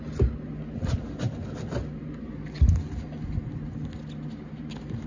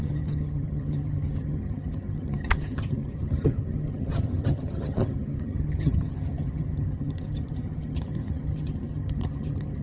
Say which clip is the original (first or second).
first